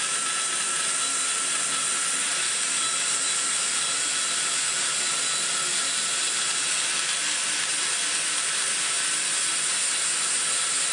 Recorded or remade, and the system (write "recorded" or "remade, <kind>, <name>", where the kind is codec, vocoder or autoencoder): recorded